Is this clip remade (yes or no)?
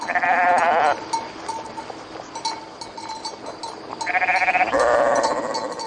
no